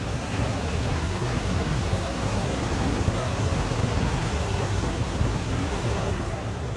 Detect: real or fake fake